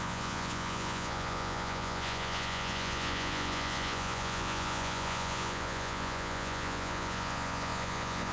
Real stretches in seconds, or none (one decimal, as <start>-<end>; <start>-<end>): none